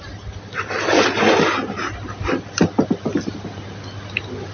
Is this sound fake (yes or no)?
no